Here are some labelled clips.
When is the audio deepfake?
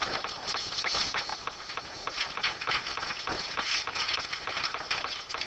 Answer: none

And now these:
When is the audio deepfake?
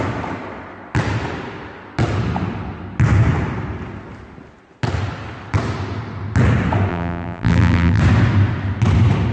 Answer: 6.9-8.0 (vocoder, BigVGAN v2)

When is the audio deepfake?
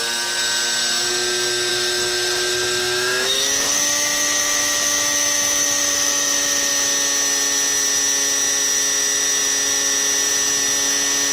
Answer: 1.7-6.7 (autoencoder, DAC-VAE)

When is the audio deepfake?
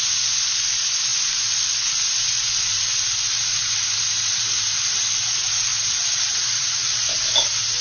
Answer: 5.7-7.1 (vocoder, Vocos)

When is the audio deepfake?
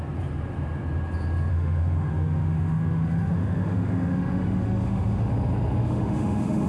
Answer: 1.5-5.3 (autoencoder, DAC-VAE); 5.8-6.7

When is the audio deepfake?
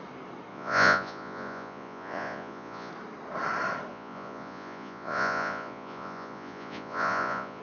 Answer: 0.5-2.9 (vocoder, Vocos); 3.9-7.6